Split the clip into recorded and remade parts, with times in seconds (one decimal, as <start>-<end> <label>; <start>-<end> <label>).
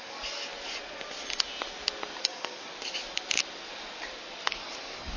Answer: 0.0-0.5 remade; 0.5-2.2 recorded; 2.2-2.7 remade; 2.7-4.4 recorded; 4.4-5.2 remade